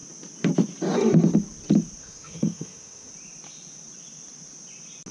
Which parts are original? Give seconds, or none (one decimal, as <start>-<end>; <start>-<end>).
0.0-2.0; 3.1-5.1